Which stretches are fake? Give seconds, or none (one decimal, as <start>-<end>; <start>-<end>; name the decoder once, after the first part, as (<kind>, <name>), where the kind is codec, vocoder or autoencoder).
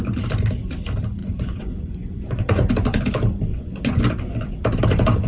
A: 1.2-2.7 (vocoder, Vocos); 3.5-4.0